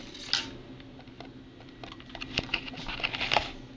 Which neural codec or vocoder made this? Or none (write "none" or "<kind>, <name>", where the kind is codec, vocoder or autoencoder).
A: none